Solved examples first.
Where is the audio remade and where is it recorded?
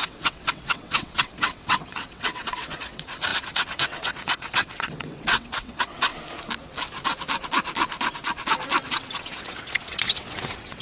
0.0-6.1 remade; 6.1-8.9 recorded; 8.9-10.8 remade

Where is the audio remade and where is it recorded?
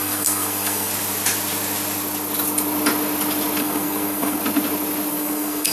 0.0-0.9 remade; 0.9-3.6 recorded; 3.6-4.4 remade; 4.4-5.1 recorded; 5.1-5.7 remade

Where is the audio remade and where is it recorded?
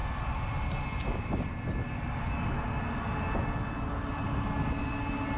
0.0-5.4 recorded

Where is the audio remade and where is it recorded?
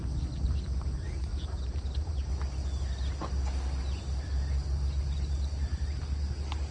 0.0-1.3 recorded; 1.3-2.3 remade; 2.3-6.7 recorded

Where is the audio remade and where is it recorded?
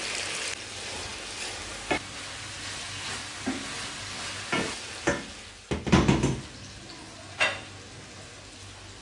0.0-9.0 recorded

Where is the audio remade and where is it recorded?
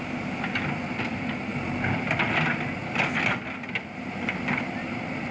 0.0-5.3 recorded